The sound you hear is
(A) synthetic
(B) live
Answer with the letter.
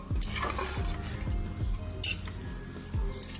B